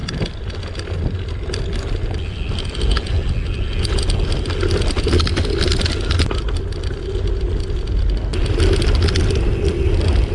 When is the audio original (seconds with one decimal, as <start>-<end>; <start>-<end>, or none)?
0.0-10.3